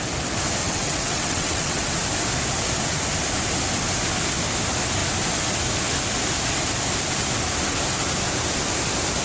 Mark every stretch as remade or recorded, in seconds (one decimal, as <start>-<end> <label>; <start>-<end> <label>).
0.0-0.6 recorded; 0.6-1.9 remade; 1.9-9.2 recorded

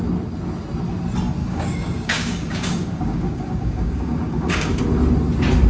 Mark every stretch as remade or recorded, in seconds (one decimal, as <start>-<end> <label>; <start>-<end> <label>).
0.0-1.4 recorded; 1.4-4.8 remade; 4.8-5.7 recorded

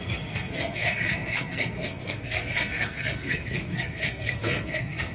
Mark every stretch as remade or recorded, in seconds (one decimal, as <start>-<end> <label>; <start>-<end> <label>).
0.0-5.1 remade

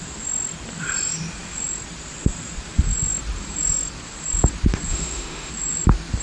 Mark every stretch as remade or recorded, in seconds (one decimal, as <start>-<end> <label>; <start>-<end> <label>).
0.0-4.9 recorded; 4.9-5.5 remade; 5.5-6.2 recorded

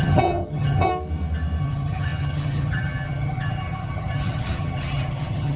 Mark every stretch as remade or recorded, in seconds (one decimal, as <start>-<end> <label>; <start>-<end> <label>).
0.0-0.9 remade; 0.9-1.6 recorded; 1.6-5.6 remade

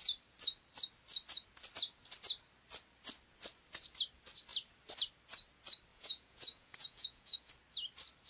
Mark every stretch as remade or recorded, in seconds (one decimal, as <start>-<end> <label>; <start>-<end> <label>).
0.0-5.9 recorded; 5.9-7.5 remade; 7.5-8.3 recorded